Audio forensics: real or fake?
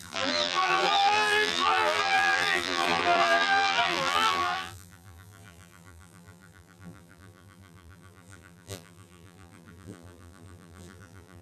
fake